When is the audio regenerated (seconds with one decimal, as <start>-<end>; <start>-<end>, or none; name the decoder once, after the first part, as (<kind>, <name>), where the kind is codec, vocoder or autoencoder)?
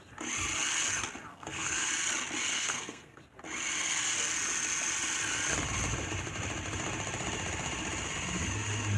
1.3-1.9 (codec, SNAC); 2.5-3.2